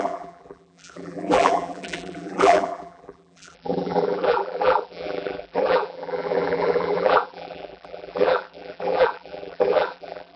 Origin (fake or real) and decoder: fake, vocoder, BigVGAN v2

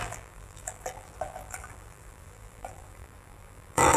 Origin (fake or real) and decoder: fake, vocoder, BigVGAN v2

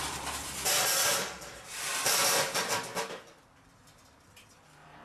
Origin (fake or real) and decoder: fake, vocoder, BigVGAN v2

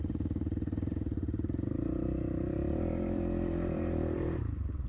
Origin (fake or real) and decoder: fake, vocoder, BigVGAN v2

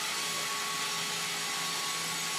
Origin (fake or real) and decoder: real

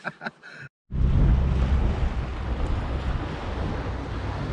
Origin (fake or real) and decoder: real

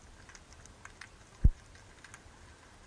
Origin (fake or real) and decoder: real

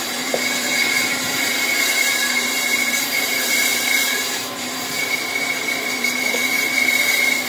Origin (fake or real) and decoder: fake, vocoder, BigVGAN v2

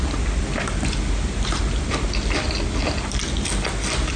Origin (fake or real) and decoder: real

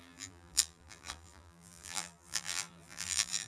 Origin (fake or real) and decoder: fake, vocoder, BigVGAN v2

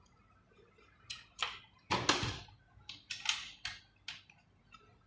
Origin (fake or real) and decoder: real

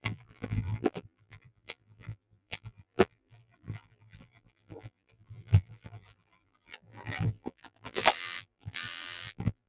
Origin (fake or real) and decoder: fake, vocoder, BigVGAN v2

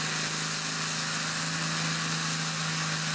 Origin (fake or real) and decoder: real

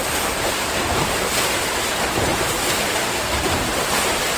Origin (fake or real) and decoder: fake, vocoder, BigVGAN v2